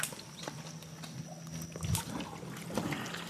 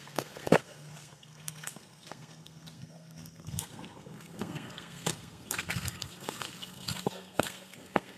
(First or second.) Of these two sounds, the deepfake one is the second